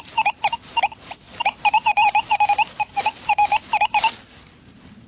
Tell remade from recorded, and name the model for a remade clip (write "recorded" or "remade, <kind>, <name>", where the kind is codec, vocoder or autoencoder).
remade, vocoder, BigVGAN v2